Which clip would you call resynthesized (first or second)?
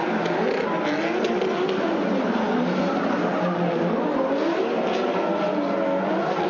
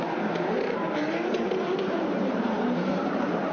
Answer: second